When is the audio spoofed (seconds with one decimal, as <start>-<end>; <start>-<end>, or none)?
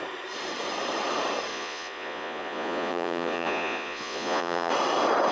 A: 1.5-4.7